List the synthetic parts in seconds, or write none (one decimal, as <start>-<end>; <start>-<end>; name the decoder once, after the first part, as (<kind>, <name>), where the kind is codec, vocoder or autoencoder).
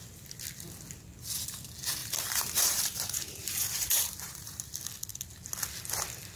2.0-4.6 (vocoder, BigVGAN v2)